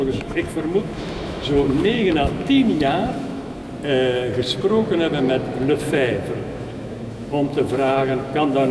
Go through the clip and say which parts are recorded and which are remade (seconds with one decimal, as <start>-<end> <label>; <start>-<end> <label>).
0.0-3.6 remade; 3.6-5.9 recorded; 5.9-8.7 remade